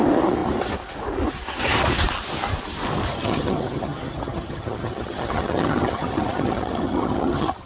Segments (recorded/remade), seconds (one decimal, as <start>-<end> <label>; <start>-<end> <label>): 0.0-3.1 recorded; 3.1-7.7 remade